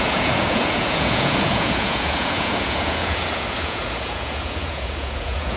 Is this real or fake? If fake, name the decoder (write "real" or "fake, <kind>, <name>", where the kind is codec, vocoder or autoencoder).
fake, vocoder, Vocos